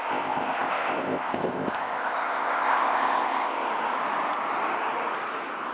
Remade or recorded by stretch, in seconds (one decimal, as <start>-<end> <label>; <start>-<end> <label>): 0.0-3.7 remade; 3.7-5.7 recorded

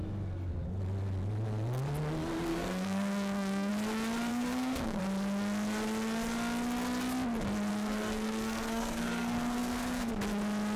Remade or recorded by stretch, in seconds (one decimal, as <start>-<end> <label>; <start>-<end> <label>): 0.0-2.5 recorded; 2.5-3.7 remade; 3.7-4.3 recorded; 4.3-5.0 remade; 5.0-7.7 recorded; 7.7-10.1 remade; 10.1-10.8 recorded

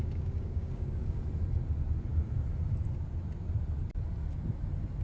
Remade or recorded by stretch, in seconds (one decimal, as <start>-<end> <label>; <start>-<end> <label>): 0.0-1.2 remade; 1.2-5.0 recorded